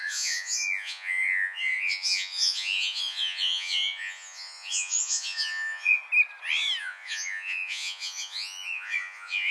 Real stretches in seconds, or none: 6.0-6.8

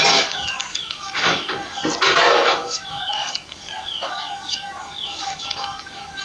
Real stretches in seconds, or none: 1.8-2.3

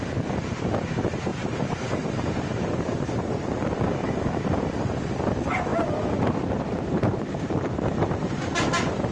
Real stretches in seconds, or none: 0.0-1.3; 3.6-5.7

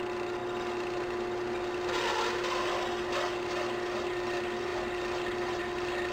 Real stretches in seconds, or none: 0.0-6.1

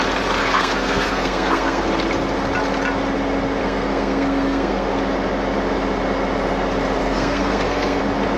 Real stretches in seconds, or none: 0.0-0.4; 1.8-3.6; 4.9-7.0; 8.0-8.4